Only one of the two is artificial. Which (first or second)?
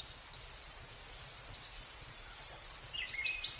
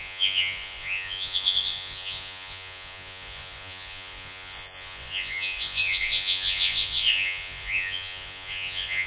second